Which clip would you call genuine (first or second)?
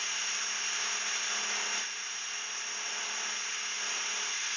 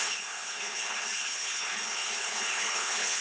first